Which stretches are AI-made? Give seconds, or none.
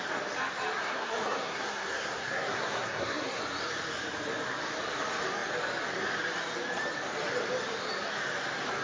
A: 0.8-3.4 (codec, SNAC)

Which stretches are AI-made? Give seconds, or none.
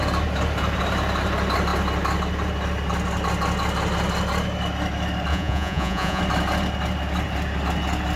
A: 5.3-6.2 (vocoder, Vocos)